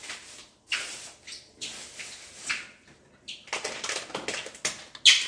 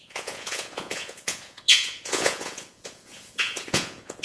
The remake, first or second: second